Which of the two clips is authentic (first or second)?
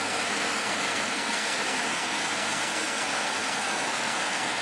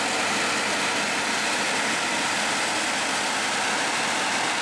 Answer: second